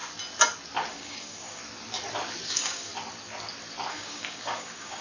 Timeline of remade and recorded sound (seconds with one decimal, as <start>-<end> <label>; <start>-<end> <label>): 0.0-0.9 recorded; 0.9-1.6 remade; 1.6-2.5 recorded; 2.5-2.9 remade; 2.9-3.9 recorded; 3.9-5.0 remade